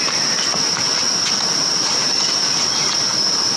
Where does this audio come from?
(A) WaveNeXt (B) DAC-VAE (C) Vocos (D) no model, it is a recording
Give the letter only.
D